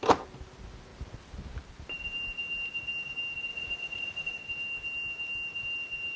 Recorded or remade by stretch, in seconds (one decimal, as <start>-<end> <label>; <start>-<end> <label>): 0.0-3.5 recorded; 3.5-4.4 remade; 4.4-6.2 recorded